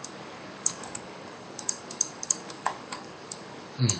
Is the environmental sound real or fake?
fake